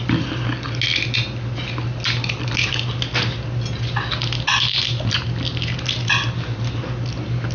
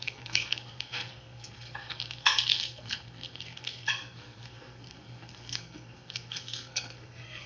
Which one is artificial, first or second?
second